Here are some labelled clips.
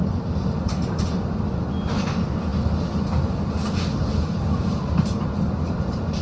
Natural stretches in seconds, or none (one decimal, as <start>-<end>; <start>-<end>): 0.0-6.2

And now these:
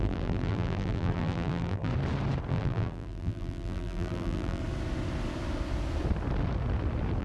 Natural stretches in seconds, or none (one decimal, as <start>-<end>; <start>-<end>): 1.9-2.5; 4.6-7.2

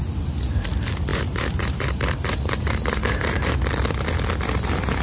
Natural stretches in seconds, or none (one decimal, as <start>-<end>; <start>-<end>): 0.0-1.1; 3.4-5.0